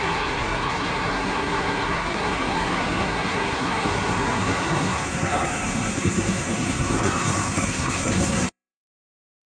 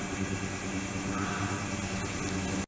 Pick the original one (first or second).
second